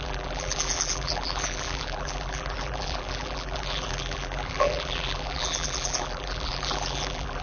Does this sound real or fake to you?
fake